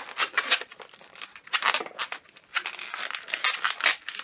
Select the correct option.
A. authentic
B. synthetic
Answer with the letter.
A